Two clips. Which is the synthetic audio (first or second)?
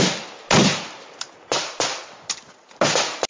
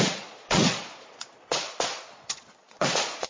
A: second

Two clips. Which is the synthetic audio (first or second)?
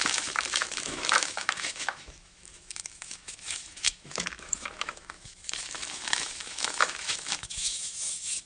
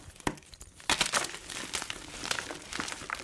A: first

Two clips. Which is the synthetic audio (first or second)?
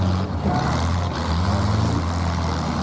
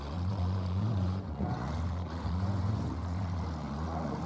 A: second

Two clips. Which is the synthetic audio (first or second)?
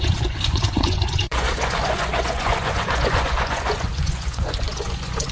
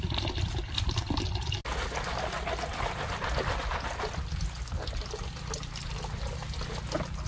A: first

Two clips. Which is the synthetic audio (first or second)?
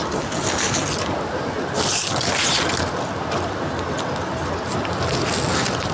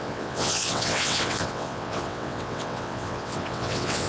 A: second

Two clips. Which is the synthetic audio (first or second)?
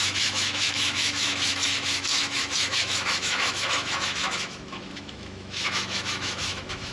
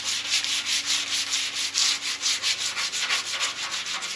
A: first